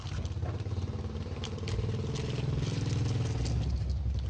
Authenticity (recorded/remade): recorded